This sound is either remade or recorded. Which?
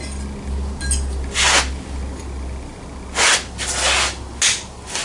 recorded